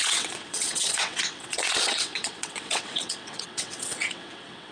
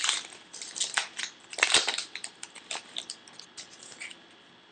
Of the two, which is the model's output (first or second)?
first